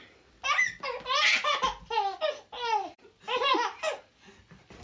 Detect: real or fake real